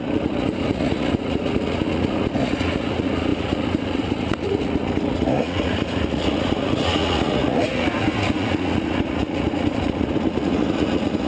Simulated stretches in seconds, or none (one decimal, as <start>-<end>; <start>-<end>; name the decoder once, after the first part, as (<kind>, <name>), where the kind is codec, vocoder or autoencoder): 0.0-11.3 (vocoder, Vocos)